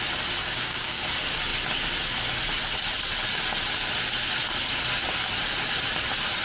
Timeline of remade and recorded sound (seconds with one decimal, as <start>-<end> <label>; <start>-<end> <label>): 0.0-0.4 recorded; 0.4-1.0 remade; 1.0-6.4 recorded